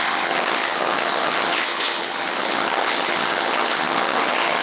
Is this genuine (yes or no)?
no